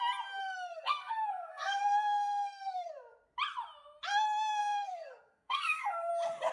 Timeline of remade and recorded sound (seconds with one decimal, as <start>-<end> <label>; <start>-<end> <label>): 0.0-0.4 recorded; 0.4-2.9 remade; 2.9-4.6 recorded; 4.6-6.1 remade; 6.1-6.5 recorded